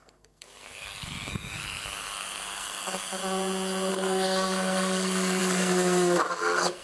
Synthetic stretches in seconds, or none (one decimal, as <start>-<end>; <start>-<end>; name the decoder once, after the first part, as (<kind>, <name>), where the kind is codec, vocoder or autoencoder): 0.0-3.2 (codec, SNAC); 3.9-6.8